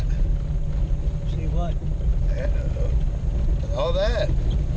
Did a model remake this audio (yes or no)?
no